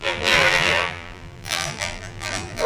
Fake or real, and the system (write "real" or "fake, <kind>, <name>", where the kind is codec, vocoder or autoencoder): fake, vocoder, BigVGAN v2